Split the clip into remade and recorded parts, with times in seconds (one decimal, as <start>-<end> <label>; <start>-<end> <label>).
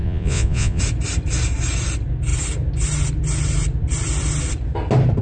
0.0-0.8 remade; 0.8-5.2 recorded